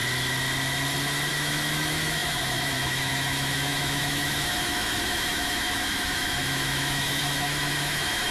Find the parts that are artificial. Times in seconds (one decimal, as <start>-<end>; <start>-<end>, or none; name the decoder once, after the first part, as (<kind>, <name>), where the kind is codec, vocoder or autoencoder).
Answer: 1.3-8.3 (autoencoder, DAC-VAE)